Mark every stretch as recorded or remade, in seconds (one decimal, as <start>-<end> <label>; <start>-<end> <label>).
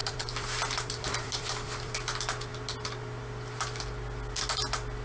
0.0-1.9 remade; 1.9-5.0 recorded